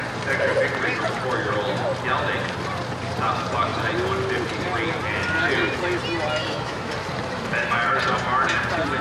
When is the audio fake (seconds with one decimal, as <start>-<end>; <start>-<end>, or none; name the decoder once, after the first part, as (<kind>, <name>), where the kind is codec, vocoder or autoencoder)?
6.4-6.9 (autoencoder, DAC-VAE)